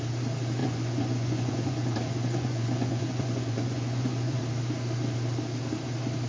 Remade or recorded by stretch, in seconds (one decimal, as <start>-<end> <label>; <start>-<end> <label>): 0.0-0.6 recorded; 0.6-4.4 remade; 4.4-6.3 recorded